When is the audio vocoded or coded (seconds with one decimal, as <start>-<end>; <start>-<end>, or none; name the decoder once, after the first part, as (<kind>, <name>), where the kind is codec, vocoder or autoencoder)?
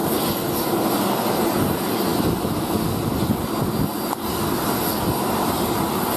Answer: 2.1-2.8 (autoencoder, DAC-VAE)